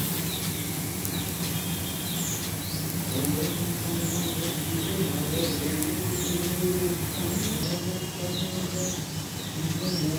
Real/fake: real